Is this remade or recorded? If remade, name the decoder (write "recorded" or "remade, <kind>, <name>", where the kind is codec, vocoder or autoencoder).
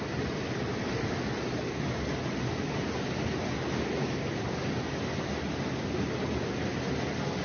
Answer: recorded